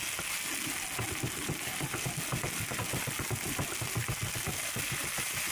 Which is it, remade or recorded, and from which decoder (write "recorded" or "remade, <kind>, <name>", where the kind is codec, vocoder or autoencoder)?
recorded